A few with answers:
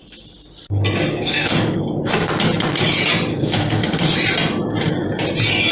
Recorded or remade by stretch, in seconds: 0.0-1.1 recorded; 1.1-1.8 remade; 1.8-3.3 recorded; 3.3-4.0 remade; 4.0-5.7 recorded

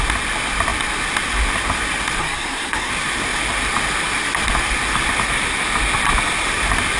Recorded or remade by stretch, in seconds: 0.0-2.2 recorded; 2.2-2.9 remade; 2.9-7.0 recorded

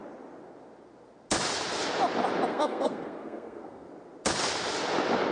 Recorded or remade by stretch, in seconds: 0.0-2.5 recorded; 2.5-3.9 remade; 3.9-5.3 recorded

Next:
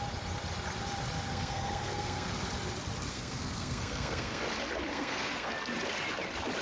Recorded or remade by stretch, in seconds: 0.0-1.3 recorded; 1.3-2.3 remade; 2.3-3.1 recorded; 3.1-4.4 remade; 4.4-4.9 recorded; 4.9-5.5 remade; 5.5-6.6 recorded

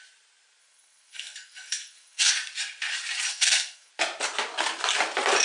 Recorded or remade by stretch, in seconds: 0.0-0.6 recorded; 0.6-2.3 remade; 2.3-3.3 recorded; 3.3-3.9 remade; 3.9-5.4 recorded

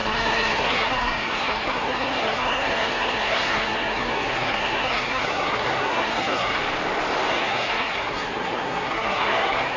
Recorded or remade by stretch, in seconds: 0.0-6.6 remade; 6.6-7.3 recorded; 7.3-9.8 remade

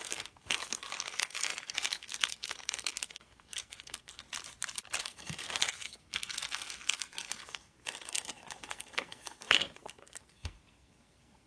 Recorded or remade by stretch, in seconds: 0.0-4.2 remade; 4.2-5.0 recorded; 5.0-11.5 remade

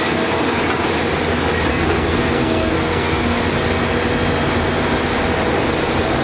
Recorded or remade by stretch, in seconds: 0.0-1.7 recorded; 1.7-3.4 remade; 3.4-6.2 recorded